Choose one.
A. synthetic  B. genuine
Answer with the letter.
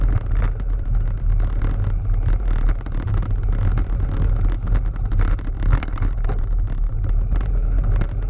B